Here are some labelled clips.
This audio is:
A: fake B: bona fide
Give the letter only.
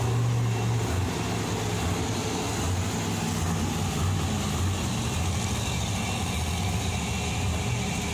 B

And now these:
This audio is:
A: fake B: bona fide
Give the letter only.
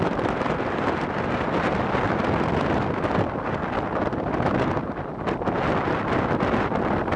B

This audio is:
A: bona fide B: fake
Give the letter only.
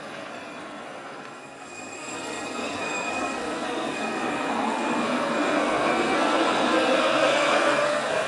B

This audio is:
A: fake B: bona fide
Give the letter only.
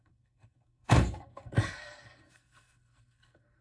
A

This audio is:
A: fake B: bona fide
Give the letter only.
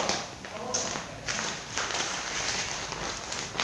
B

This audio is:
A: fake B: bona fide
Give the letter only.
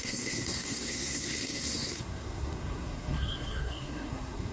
A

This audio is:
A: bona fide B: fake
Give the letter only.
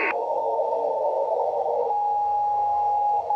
B